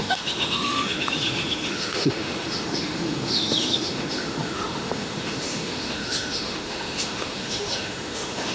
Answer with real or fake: fake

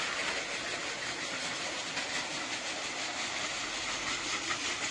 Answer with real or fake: real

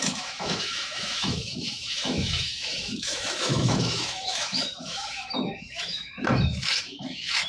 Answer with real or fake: fake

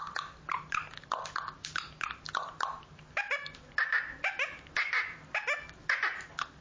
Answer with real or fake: real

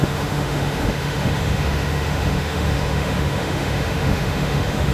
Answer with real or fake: fake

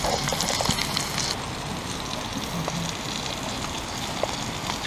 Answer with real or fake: real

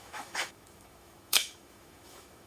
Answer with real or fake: fake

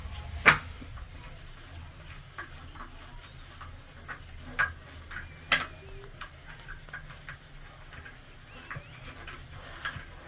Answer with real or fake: real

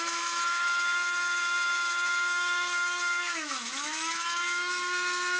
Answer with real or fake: fake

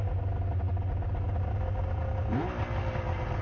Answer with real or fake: real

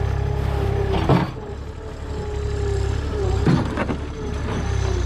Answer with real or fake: real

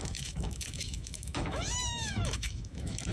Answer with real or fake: fake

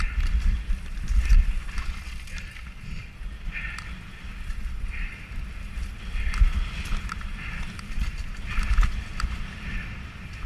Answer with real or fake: real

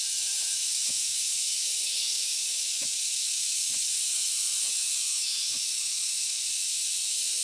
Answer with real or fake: fake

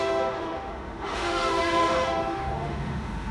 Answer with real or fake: fake